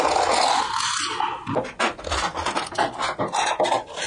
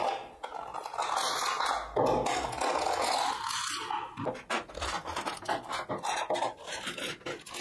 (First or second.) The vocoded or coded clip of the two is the first